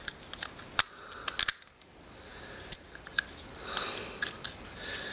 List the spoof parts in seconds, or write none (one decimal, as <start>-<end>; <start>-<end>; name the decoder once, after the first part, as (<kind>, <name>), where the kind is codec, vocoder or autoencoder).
none